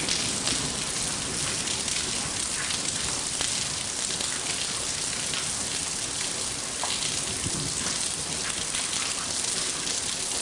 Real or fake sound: real